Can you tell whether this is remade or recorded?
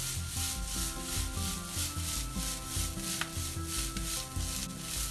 recorded